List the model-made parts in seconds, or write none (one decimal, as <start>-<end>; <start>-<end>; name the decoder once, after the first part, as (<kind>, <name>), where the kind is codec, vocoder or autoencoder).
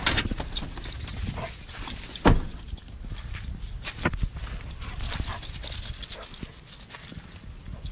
none